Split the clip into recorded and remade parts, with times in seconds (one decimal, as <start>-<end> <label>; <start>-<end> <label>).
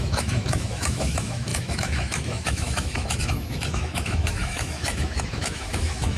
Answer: 0.0-6.2 remade